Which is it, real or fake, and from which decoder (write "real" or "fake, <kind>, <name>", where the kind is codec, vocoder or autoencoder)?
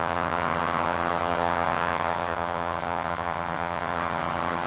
fake, vocoder, HiFi-GAN